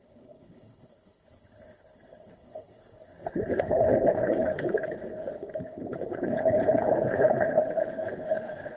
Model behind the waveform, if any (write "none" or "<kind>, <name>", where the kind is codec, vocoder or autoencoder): codec, HILCodec